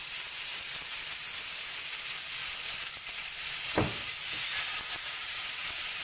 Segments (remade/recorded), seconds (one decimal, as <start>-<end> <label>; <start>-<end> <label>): 0.0-1.1 remade; 1.1-2.4 recorded; 2.4-6.0 remade